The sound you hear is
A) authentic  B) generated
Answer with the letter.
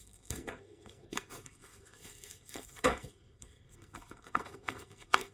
B